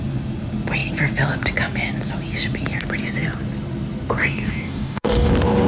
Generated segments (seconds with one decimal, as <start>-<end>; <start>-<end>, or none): 4.2-5.3

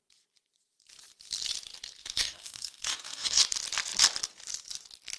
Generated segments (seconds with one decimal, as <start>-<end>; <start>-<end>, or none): 2.0-3.4

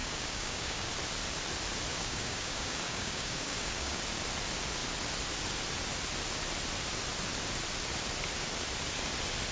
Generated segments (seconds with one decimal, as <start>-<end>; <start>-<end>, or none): 0.0-0.9; 1.9-4.0

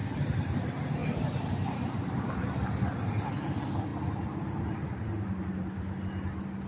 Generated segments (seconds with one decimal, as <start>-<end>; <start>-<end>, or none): none

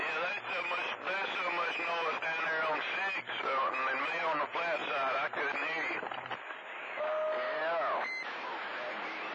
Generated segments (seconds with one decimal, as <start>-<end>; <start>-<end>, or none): none

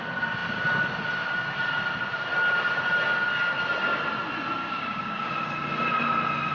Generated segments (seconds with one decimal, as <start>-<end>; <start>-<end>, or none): 4.6-5.3

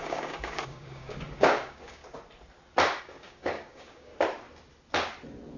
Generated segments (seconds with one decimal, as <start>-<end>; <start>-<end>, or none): 0.0-2.0; 3.0-4.1